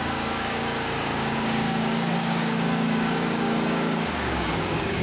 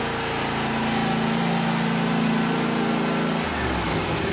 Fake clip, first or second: first